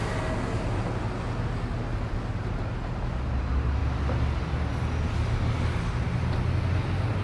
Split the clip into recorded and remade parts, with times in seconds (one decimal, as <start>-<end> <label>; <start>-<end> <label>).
0.0-7.2 recorded

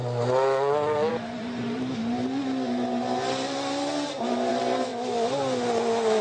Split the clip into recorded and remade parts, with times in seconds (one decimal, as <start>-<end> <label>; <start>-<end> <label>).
0.0-1.1 recorded; 1.1-4.9 remade; 4.9-6.2 recorded